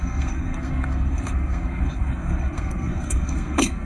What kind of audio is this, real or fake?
fake